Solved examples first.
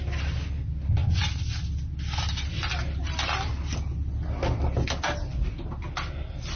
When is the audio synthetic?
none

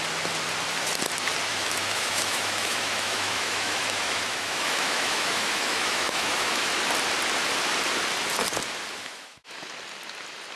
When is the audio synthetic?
1.5-6.7 (autoencoder, DAC-VAE); 9.0-9.7

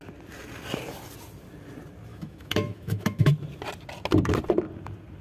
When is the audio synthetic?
2.1-3.3 (autoencoder, DAC-VAE)

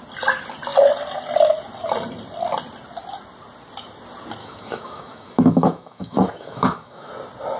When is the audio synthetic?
4.4-7.1 (autoencoder, DAC-VAE)

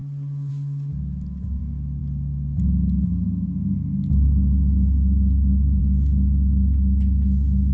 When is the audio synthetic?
none